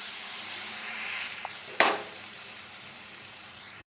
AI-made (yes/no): yes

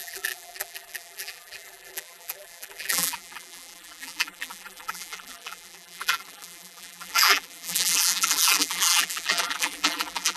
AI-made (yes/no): yes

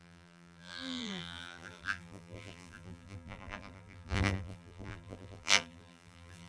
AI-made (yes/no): yes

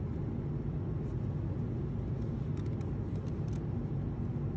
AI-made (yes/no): no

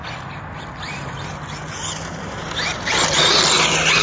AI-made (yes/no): no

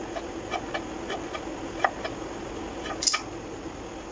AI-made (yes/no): no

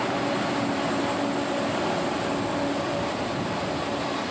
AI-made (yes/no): no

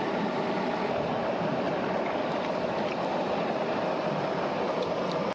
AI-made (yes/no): no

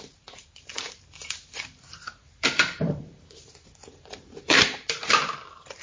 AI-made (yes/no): yes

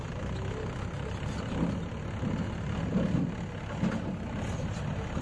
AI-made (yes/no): no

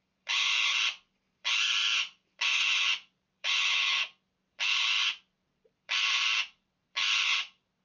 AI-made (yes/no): yes